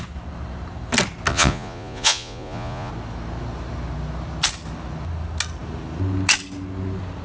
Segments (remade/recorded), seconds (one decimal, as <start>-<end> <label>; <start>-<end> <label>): 0.0-1.3 recorded; 1.3-2.9 remade; 2.9-7.2 recorded